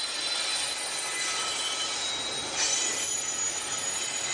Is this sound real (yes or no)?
yes